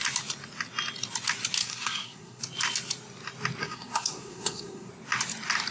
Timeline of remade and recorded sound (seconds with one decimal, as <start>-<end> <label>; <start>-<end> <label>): 0.0-1.6 recorded; 1.6-2.4 remade; 2.4-3.6 recorded; 3.6-4.9 remade; 4.9-5.7 recorded